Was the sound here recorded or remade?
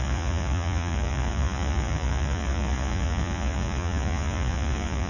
remade